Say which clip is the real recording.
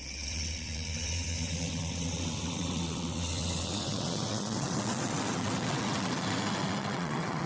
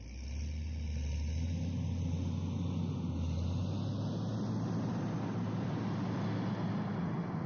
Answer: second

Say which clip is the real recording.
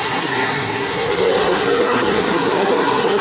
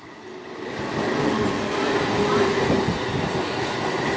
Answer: second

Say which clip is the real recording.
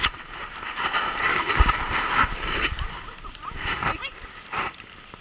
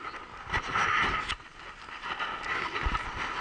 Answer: second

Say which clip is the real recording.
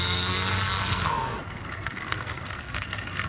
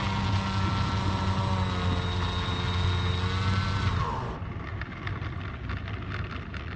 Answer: second